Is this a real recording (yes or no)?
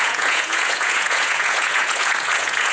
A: no